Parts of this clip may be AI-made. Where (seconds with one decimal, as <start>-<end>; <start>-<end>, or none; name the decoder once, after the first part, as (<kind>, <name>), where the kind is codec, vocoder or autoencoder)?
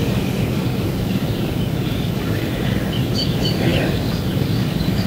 0.0-5.1 (codec, DAC)